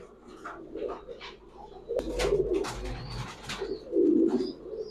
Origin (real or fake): real